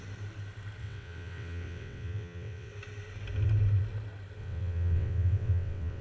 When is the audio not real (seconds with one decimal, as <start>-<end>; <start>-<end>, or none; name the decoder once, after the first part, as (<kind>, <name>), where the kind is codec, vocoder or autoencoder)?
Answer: 0.8-2.7 (vocoder, WaveNeXt); 4.4-6.0